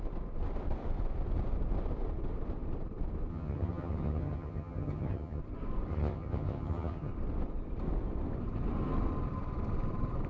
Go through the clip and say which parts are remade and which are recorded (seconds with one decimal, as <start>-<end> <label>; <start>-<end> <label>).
0.0-3.3 recorded; 3.3-5.4 remade; 5.4-5.9 recorded; 5.9-7.1 remade; 7.1-10.3 recorded